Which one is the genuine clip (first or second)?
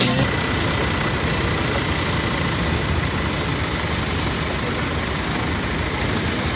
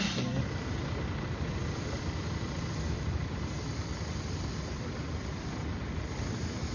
first